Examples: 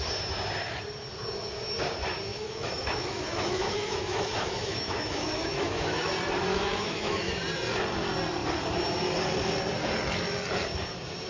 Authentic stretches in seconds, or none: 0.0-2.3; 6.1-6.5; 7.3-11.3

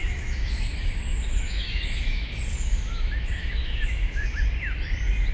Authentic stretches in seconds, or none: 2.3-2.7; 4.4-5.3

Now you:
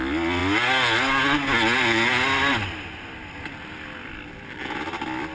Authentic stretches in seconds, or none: 0.0-5.3